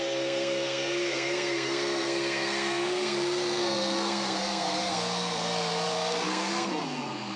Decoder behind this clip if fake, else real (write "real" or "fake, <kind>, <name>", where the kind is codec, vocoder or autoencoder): fake, codec, SNAC